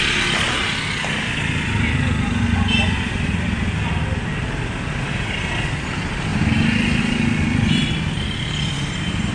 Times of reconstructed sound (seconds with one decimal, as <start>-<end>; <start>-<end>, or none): none